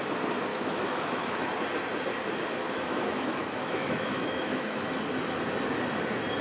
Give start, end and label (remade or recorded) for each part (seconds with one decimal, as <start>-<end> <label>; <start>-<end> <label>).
0.0-0.5 recorded; 0.5-1.4 remade; 1.4-2.6 recorded; 2.6-4.9 remade; 4.9-6.4 recorded

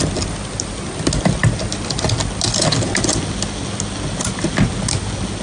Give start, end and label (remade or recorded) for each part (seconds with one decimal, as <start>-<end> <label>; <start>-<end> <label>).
0.0-5.4 recorded

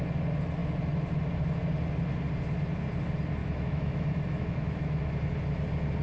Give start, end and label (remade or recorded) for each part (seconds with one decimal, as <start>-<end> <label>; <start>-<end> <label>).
0.0-3.4 recorded; 3.4-5.0 remade; 5.0-6.0 recorded

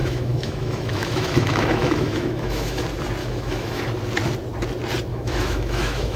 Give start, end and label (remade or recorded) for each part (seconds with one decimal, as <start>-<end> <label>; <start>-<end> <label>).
0.0-2.8 remade; 2.8-3.2 recorded; 3.2-3.8 remade; 3.8-5.1 recorded; 5.1-6.2 remade

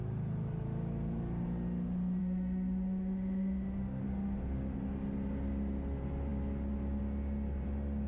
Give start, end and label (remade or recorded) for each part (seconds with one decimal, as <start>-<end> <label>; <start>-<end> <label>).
0.0-2.2 recorded; 2.2-4.0 remade; 4.0-8.1 recorded

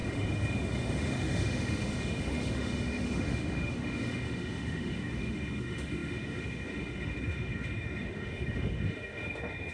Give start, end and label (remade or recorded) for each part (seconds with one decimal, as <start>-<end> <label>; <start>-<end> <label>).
0.0-9.7 remade

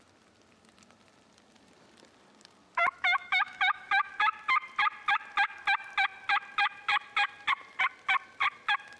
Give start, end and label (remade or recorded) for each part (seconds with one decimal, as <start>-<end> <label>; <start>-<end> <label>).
0.0-2.8 recorded; 2.8-4.1 remade; 4.1-9.0 recorded

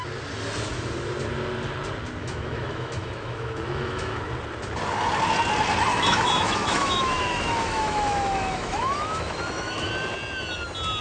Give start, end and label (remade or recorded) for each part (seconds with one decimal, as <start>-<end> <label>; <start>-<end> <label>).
0.0-2.2 recorded; 2.2-4.2 remade; 4.2-5.9 recorded; 5.9-9.9 remade; 9.9-11.0 recorded